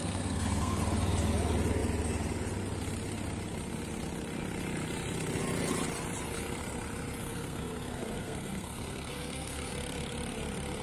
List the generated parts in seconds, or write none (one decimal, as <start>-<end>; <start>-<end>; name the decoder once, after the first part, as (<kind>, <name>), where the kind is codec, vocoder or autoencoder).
0.0-0.8 (codec, SNAC); 7.2-9.7